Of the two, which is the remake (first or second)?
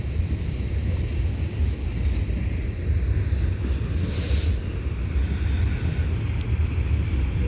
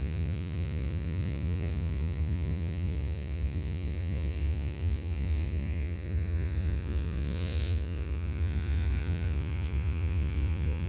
second